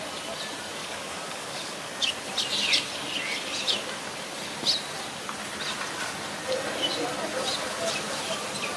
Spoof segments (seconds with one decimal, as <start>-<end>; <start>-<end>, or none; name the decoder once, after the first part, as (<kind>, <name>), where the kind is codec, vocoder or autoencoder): 0.8-2.1 (codec, DAC)